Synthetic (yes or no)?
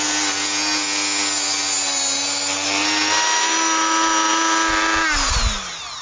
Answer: no